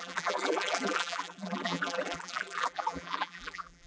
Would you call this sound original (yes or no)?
no